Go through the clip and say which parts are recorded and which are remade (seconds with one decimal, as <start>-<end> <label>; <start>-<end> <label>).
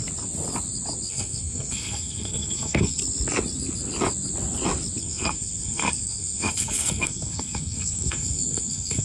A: 0.0-1.1 recorded; 1.1-3.0 remade; 3.0-5.0 recorded; 5.0-9.0 remade